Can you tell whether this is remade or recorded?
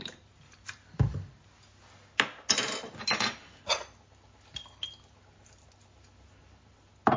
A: recorded